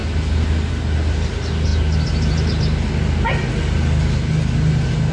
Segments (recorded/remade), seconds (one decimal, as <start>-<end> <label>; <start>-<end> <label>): 0.0-5.1 recorded